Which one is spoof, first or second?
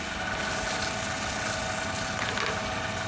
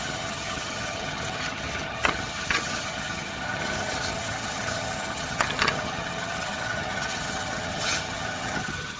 second